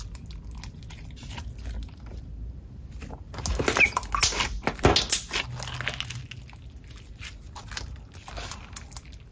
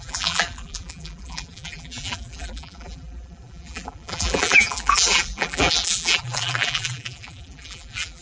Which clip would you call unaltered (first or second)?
first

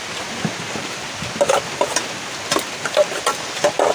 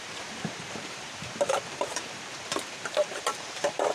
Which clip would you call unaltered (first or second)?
first